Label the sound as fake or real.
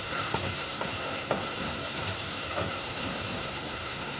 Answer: fake